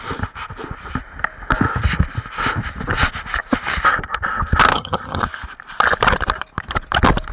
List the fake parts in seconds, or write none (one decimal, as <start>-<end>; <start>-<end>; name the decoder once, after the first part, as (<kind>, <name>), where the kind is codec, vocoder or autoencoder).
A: 4.7-5.2 (vocoder, HiFi-GAN)